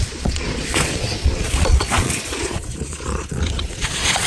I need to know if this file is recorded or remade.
remade